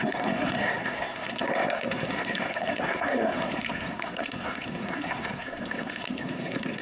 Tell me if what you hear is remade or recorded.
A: remade